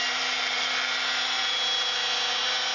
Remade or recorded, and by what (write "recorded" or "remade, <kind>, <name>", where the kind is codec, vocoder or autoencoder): recorded